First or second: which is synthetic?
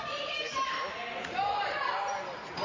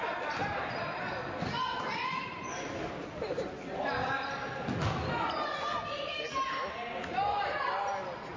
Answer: first